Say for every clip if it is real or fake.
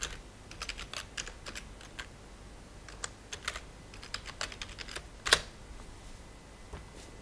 real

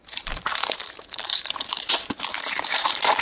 fake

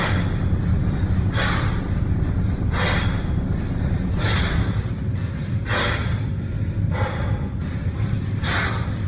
real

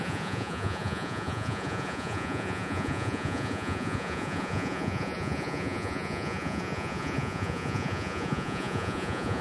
fake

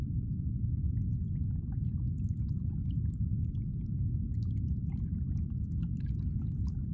real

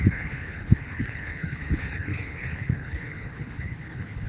fake